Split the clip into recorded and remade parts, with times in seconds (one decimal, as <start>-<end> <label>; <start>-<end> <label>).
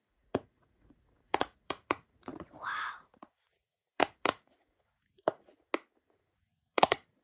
0.0-5.5 remade; 5.5-6.1 recorded; 6.1-7.2 remade